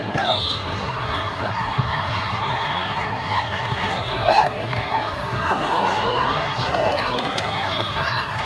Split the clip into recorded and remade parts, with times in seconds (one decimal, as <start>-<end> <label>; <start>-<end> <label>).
0.0-8.4 remade